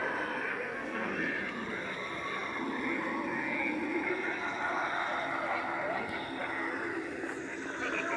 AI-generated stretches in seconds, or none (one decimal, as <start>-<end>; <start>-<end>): 0.5-1.1